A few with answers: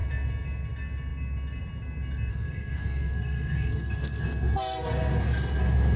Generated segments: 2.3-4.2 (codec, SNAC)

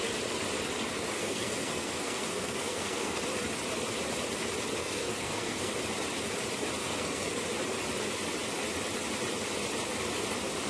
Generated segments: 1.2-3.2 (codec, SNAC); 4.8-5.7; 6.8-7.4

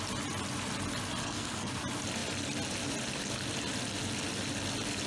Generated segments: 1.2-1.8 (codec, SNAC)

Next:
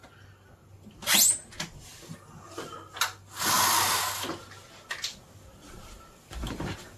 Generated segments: none